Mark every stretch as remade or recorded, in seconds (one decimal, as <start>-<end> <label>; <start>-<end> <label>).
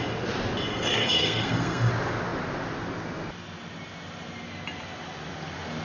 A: 0.0-0.7 recorded; 0.7-1.9 remade; 1.9-5.8 recorded